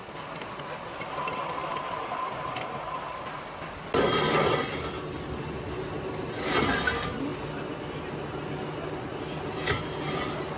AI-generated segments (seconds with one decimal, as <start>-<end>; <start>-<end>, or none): none